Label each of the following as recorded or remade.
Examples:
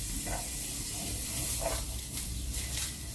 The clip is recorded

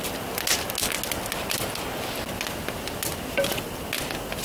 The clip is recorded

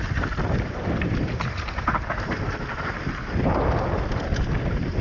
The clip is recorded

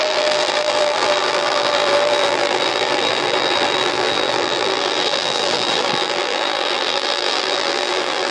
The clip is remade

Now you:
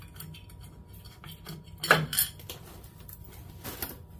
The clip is recorded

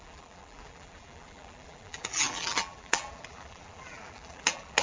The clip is remade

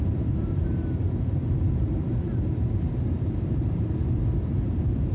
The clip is remade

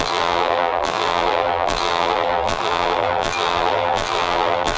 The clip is remade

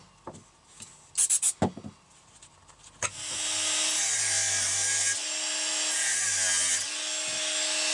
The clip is recorded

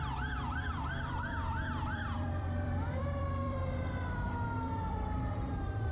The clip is remade